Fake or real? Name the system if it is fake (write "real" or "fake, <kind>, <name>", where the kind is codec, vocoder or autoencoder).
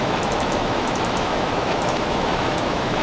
fake, autoencoder, DAC-VAE